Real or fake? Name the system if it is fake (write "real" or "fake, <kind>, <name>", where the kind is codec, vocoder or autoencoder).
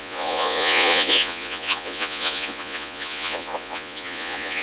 fake, vocoder, Vocos